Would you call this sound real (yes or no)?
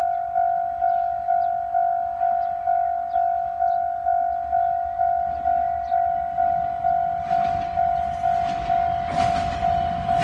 yes